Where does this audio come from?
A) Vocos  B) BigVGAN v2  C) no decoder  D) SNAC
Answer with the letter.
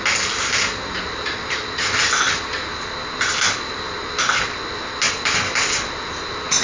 C